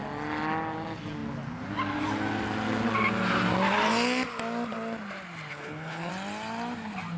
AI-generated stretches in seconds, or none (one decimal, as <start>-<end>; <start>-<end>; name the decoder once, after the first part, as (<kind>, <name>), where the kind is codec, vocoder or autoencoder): 5.5-6.1 (codec, HILCodec)